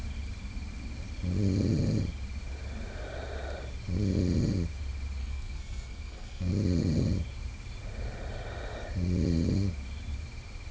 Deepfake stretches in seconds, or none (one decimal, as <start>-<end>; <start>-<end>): 5.2-6.5